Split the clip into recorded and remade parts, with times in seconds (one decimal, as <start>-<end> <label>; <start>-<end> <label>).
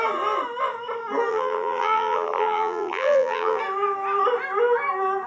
0.0-1.3 recorded; 1.3-3.6 remade; 3.6-5.3 recorded